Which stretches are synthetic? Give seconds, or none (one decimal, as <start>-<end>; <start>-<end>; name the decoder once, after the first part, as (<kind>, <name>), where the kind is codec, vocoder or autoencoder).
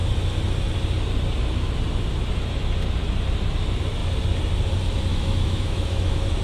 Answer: 5.1-6.4 (autoencoder, DAC-VAE)